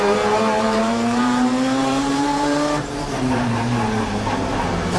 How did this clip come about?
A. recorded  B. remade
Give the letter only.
B